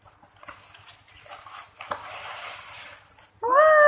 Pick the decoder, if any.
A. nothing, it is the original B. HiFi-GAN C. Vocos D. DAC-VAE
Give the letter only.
A